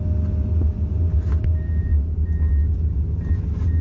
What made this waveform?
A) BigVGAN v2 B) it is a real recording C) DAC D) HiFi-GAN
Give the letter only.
B